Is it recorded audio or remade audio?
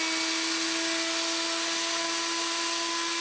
recorded